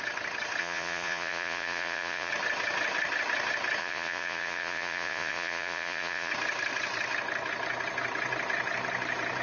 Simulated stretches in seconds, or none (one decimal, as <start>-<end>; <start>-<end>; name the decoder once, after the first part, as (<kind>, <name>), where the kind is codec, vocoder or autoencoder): 0.6-2.3 (vocoder, Vocos); 3.8-6.3